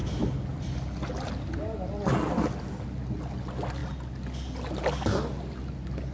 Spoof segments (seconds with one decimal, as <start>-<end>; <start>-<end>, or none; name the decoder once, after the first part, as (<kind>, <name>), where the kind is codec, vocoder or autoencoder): none